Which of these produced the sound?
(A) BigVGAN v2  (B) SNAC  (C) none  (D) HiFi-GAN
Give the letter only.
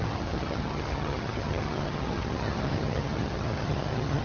D